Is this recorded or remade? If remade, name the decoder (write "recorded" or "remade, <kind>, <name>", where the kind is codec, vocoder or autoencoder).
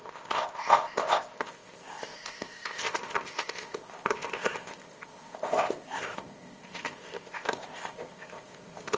remade, codec, ZipCodec